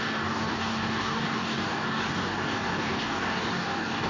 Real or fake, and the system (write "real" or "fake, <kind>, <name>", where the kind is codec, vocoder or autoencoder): fake, codec, DAC